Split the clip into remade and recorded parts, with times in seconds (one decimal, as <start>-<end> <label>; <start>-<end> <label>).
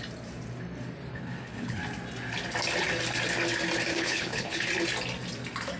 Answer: 0.0-1.1 recorded; 1.1-1.8 remade; 1.8-3.9 recorded; 3.9-4.7 remade; 4.7-5.8 recorded